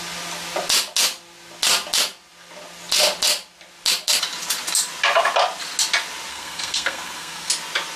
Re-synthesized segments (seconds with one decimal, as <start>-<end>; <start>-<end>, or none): 6.3-7.5